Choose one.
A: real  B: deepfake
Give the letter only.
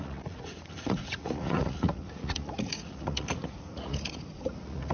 B